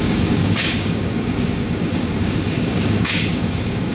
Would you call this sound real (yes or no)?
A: no